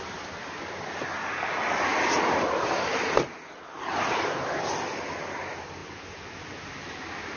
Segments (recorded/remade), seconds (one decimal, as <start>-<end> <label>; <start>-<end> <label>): 0.0-7.4 recorded